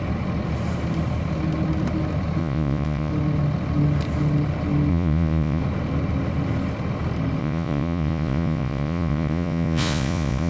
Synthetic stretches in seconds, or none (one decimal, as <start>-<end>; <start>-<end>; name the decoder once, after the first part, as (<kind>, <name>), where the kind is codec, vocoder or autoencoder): 2.4-3.1 (vocoder, Vocos); 4.9-5.6; 7.4-10.5